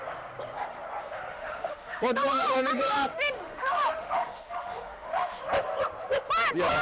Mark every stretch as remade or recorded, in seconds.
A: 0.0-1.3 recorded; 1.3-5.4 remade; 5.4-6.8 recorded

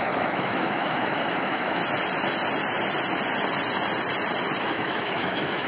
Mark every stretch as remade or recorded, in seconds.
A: 0.0-1.8 remade; 1.8-4.6 recorded; 4.6-5.7 remade

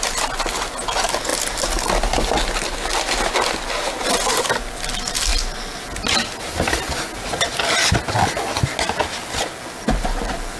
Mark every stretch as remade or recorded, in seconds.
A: 0.0-10.6 recorded

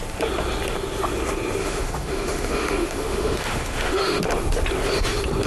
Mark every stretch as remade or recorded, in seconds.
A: 0.0-1.6 recorded; 1.6-4.2 remade; 4.2-5.5 recorded

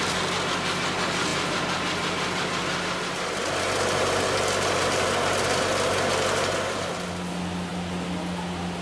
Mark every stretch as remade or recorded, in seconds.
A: 0.0-8.8 recorded

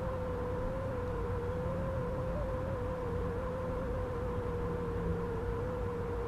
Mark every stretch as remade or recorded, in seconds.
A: 0.0-6.3 recorded

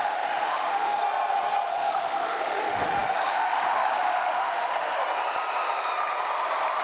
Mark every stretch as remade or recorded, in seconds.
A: 0.0-1.0 remade; 1.0-1.7 recorded; 1.7-5.0 remade; 5.0-6.8 recorded